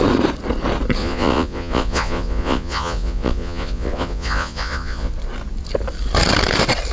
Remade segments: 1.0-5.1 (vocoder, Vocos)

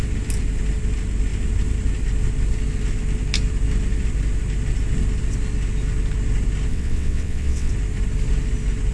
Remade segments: 6.7-7.7 (vocoder, WaveNeXt)